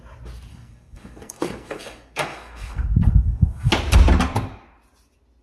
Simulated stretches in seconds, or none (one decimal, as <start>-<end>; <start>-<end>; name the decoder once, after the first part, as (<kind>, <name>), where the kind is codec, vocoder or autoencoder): 0.5-3.7 (codec, SNAC)